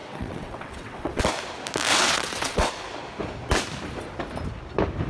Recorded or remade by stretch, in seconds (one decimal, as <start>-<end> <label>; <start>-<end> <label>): 0.0-1.2 remade; 1.2-1.9 recorded; 1.9-2.7 remade; 2.7-5.1 recorded